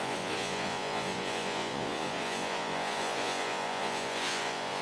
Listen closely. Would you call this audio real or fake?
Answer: fake